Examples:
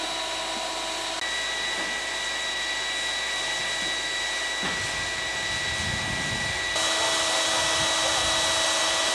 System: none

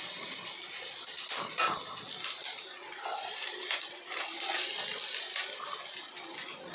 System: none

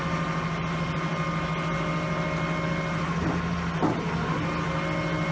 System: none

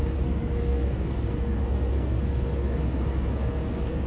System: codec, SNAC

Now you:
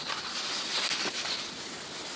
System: none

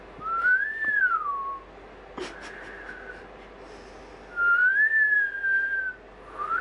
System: none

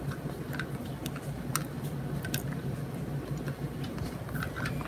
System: none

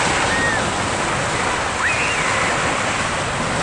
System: none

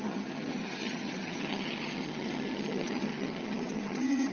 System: vocoder, HiFi-GAN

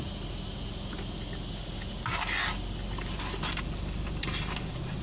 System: none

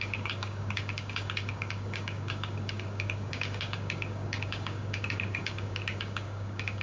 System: codec, DAC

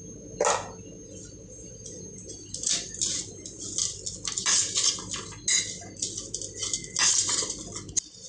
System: none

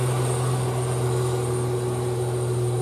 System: none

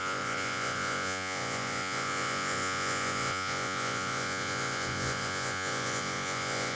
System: vocoder, Vocos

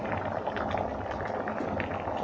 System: none